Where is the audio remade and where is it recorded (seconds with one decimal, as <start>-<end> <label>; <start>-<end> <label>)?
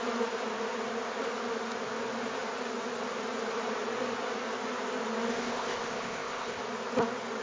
0.0-5.3 recorded; 5.3-6.6 remade; 6.6-7.4 recorded